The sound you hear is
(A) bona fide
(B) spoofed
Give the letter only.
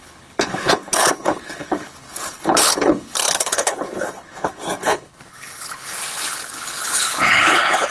B